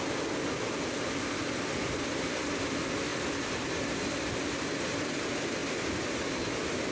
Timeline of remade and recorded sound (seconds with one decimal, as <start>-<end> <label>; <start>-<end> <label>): 0.0-6.9 recorded